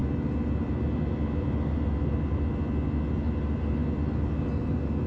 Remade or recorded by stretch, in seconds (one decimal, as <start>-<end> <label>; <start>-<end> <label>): 0.0-5.1 recorded